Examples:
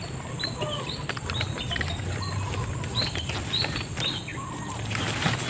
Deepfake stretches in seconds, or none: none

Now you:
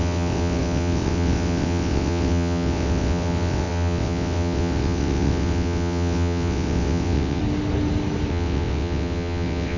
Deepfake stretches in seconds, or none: 0.0-7.4 (vocoder, WaveNeXt); 8.3-9.8

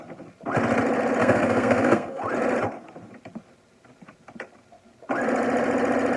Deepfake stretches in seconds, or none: 1.2-2.2 (codec, SNAC)

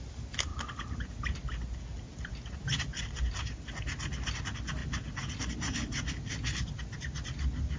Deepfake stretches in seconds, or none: none

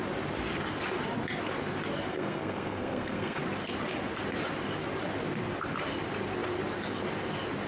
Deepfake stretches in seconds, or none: 2.1-3.4 (codec, SNAC)

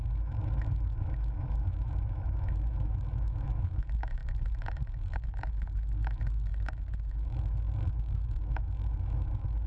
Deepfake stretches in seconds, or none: 0.0-9.7 (autoencoder, DAC-VAE)

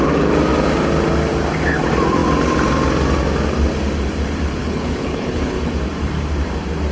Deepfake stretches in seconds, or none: 4.6-5.7 (codec, HILCodec)

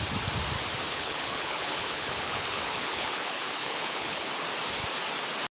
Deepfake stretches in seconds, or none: 0.9-4.3 (codec, HILCodec)